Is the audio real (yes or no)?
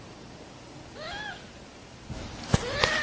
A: yes